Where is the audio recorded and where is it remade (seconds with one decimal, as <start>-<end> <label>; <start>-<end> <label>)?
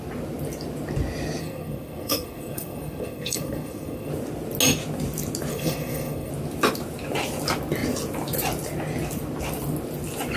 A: 0.0-1.4 recorded; 1.4-4.1 remade; 4.1-5.5 recorded; 5.5-6.3 remade; 6.3-10.4 recorded